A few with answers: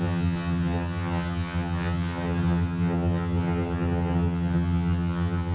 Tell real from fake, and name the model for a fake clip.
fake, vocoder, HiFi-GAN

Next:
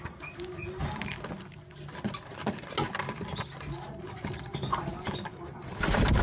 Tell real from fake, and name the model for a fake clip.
real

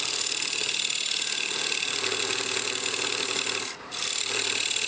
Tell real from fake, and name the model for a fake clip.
real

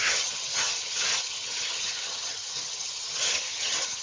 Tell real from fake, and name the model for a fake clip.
fake, vocoder, HiFi-GAN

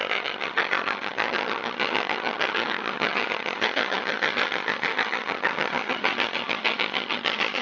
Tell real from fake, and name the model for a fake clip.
fake, vocoder, HiFi-GAN